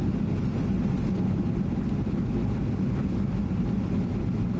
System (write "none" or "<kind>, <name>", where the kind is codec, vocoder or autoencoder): none